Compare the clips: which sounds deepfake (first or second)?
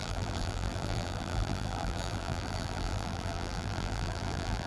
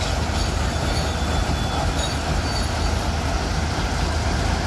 first